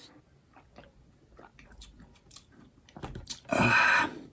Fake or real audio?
real